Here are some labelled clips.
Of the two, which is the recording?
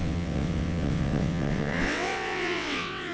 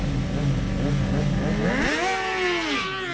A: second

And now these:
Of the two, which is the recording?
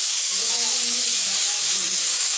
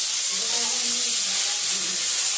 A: second